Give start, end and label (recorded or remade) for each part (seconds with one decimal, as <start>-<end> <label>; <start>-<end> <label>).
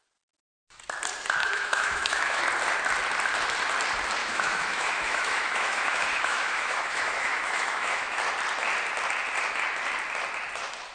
0.0-1.4 recorded; 1.4-2.4 remade; 2.4-4.2 recorded; 4.2-8.2 remade; 8.2-10.9 recorded